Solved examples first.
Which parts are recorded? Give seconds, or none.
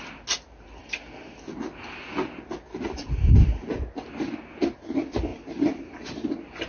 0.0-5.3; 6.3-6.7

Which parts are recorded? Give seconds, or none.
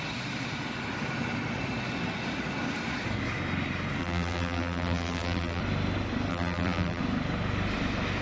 0.0-4.0; 5.6-6.3; 7.0-8.2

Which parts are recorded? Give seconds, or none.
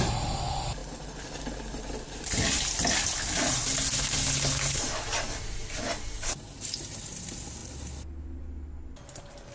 0.0-9.5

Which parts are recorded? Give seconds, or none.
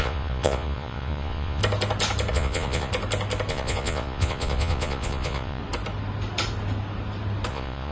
1.6-2.3; 2.9-3.5; 5.6-7.5